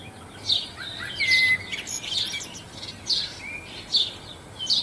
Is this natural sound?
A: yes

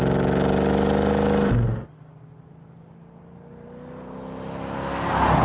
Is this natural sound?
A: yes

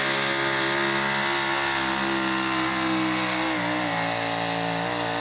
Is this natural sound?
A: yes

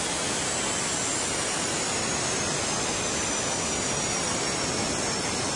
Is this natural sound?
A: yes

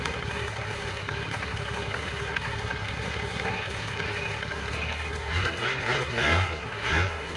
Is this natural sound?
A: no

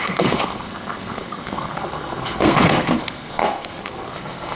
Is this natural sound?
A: no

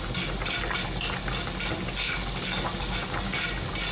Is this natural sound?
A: yes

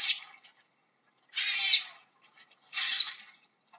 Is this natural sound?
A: yes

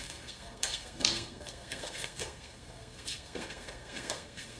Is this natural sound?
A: no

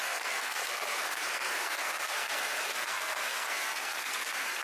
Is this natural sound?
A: no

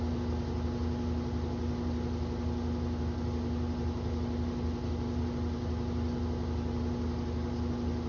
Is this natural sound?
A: yes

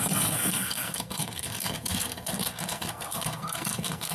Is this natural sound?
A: no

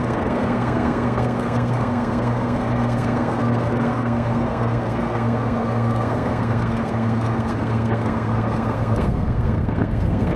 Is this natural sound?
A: no